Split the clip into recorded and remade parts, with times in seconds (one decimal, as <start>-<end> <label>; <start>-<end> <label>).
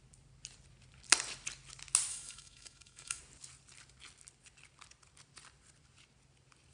0.0-2.1 recorded; 2.1-3.2 remade; 3.2-6.7 recorded